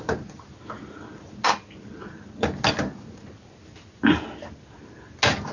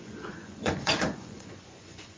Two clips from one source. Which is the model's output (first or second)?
second